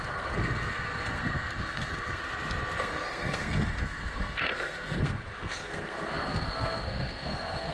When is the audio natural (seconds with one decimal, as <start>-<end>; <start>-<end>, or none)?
2.2-2.8